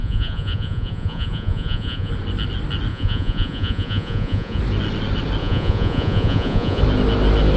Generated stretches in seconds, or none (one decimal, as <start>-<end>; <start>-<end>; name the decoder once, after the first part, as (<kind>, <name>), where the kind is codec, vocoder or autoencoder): 0.0-2.1 (vocoder, Vocos); 2.9-4.6; 5.4-6.8